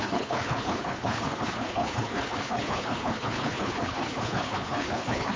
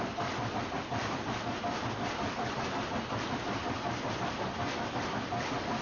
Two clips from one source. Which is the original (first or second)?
second